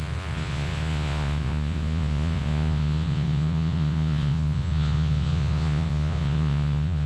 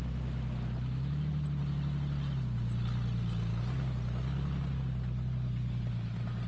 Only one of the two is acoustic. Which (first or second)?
second